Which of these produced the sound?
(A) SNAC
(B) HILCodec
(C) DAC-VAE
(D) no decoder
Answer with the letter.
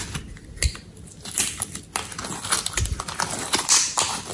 D